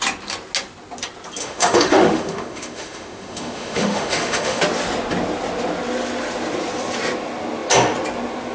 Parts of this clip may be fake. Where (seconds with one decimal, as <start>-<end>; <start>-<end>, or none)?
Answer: 1.4-4.6